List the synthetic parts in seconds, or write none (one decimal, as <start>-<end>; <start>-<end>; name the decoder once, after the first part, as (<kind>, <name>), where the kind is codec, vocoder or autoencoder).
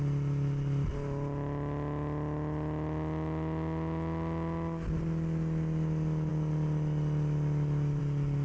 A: none